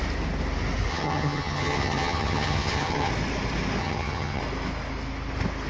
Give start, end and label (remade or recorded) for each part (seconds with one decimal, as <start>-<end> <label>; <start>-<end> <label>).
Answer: 0.0-0.9 recorded; 0.9-3.1 remade; 3.1-3.8 recorded; 3.8-4.4 remade; 4.4-5.7 recorded